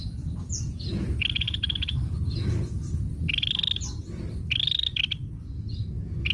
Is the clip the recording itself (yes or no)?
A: yes